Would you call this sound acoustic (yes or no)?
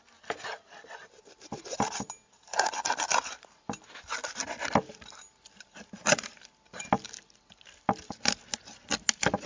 yes